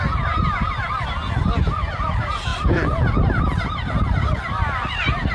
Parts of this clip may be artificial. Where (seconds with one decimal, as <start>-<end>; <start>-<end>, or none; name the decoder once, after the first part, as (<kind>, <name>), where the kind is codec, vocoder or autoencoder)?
none